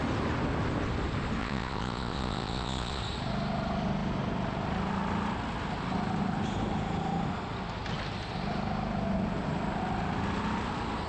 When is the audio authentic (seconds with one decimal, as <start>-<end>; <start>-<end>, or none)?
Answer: 0.0-1.4; 3.0-11.1